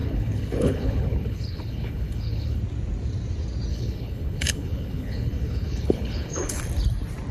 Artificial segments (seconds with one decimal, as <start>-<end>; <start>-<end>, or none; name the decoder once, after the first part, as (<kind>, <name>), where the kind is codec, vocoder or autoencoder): 0.0-2.6 (codec, HILCodec); 3.7-6.6